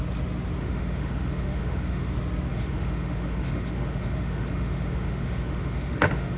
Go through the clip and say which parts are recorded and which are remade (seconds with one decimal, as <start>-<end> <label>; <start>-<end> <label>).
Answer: 0.0-0.6 recorded; 0.6-2.1 remade; 2.1-2.5 recorded; 2.5-6.4 remade